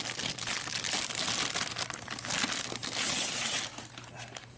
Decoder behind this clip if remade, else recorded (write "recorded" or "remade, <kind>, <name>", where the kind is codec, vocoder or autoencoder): recorded